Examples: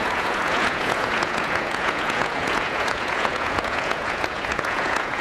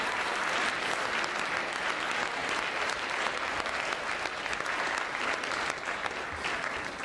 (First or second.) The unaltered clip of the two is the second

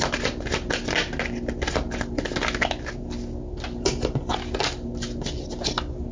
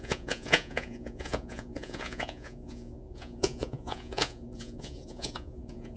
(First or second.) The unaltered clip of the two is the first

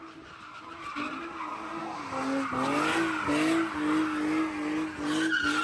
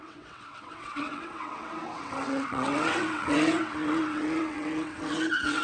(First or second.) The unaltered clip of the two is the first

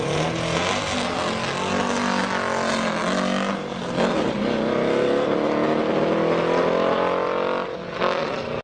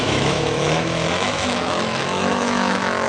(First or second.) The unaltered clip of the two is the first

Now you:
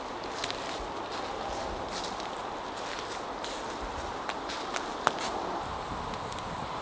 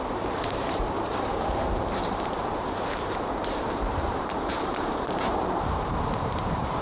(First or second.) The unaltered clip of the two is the first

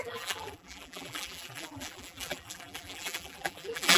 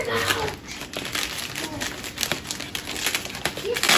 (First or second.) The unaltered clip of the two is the second